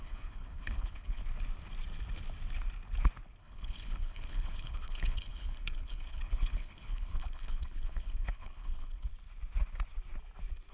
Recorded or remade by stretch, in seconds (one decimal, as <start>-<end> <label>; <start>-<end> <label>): 0.0-1.2 remade; 1.2-3.4 recorded; 3.4-9.1 remade; 9.1-10.7 recorded